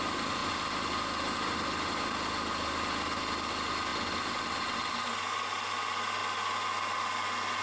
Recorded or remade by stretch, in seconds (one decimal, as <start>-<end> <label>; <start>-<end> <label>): 0.0-7.6 recorded